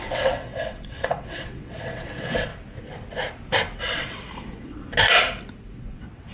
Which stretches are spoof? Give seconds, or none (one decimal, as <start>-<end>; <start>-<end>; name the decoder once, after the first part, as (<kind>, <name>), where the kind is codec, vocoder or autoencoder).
0.0-2.5 (vocoder, WaveNeXt); 3.8-4.9; 5.8-6.3